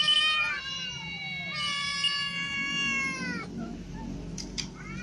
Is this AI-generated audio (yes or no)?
no